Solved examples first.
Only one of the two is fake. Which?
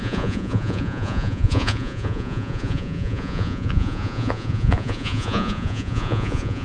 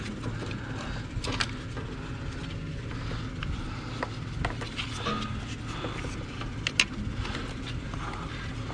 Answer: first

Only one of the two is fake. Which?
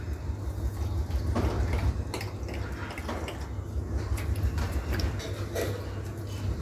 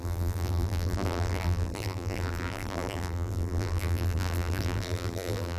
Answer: second